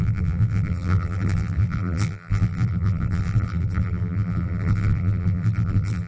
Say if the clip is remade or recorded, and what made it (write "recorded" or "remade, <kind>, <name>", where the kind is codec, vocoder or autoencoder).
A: remade, vocoder, BigVGAN v2